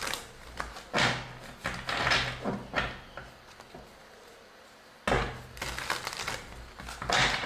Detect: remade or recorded recorded